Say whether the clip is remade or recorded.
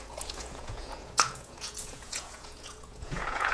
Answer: remade